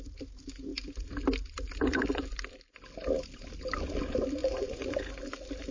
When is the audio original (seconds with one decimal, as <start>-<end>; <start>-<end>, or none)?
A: 0.0-4.4; 5.0-5.7